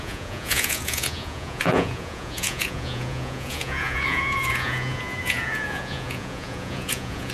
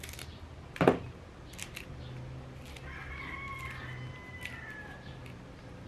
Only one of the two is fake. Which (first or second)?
first